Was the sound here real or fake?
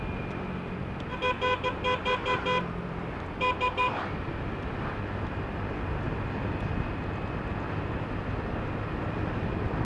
real